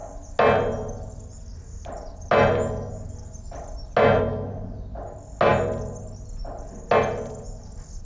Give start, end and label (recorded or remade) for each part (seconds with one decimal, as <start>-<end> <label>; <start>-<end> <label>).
0.0-8.1 recorded